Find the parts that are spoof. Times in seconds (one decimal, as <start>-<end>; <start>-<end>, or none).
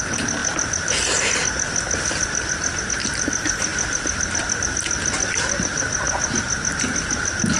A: 0.0-7.6